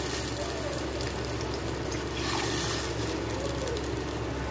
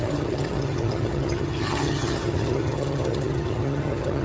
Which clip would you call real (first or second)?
first